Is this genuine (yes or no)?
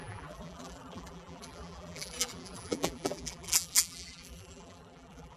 no